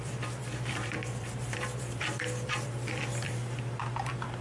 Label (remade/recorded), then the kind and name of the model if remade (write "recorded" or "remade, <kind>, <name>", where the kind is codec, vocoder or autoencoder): remade, vocoder, BigVGAN v2